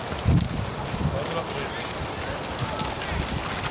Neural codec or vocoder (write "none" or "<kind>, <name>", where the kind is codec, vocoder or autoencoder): none